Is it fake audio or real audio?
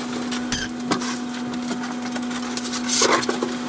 real